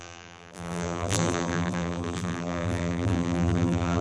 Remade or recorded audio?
remade